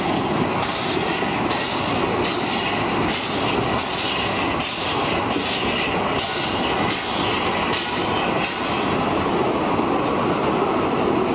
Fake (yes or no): no